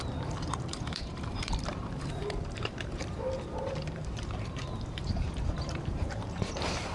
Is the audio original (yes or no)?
no